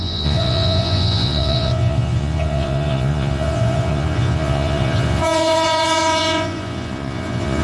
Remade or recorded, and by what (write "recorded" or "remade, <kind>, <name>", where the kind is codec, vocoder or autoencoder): remade, vocoder, Vocos